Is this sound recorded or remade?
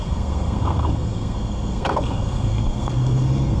remade